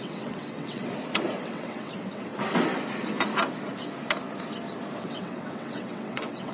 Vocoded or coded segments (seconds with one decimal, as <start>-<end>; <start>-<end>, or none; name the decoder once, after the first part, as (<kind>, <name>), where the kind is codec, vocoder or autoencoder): 0.0-0.8 (vocoder, WaveNeXt); 1.4-2.3; 5.0-6.5